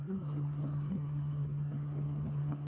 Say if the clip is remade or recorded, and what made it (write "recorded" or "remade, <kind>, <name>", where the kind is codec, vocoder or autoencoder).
remade, codec, SNAC